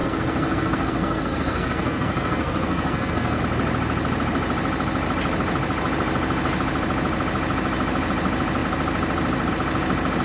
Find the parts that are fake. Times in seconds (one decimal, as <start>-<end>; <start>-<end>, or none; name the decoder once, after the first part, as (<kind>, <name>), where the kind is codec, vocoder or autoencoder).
0.0-3.4 (codec, SNAC)